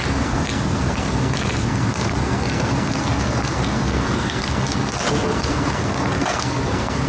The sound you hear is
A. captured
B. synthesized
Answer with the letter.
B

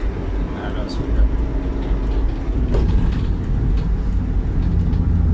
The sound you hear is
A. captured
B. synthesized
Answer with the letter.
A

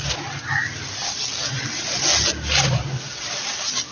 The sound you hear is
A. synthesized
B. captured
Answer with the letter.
B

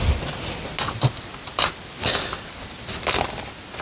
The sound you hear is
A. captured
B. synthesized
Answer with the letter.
A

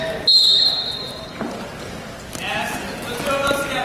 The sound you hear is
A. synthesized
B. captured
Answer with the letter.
B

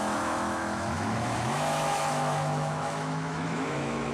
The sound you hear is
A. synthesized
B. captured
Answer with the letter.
A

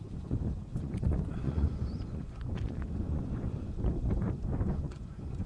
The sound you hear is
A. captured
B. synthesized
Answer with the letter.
B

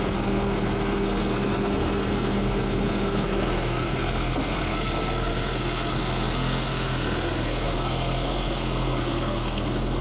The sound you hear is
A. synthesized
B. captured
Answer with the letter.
A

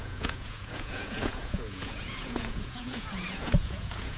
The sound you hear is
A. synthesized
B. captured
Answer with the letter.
A